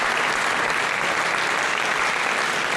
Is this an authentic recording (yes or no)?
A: yes